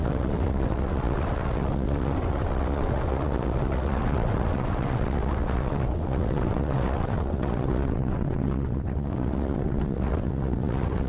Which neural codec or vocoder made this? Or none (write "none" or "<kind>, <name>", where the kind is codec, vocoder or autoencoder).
vocoder, WaveNeXt